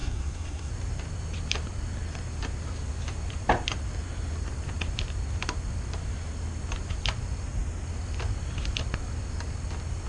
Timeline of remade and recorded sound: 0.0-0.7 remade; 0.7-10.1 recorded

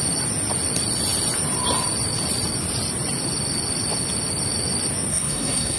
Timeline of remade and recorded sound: 0.0-5.1 recorded; 5.1-5.8 remade

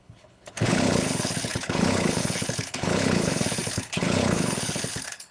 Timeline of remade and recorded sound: 0.0-5.3 remade